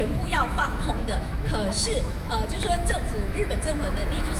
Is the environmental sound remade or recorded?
remade